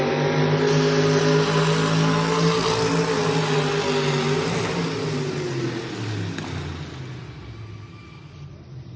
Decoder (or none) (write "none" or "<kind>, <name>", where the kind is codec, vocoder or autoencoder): none